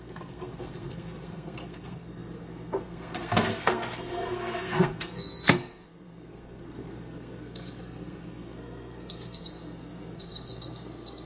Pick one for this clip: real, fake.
fake